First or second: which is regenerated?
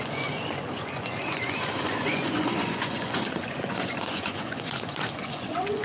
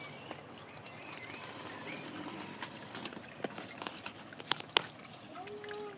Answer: first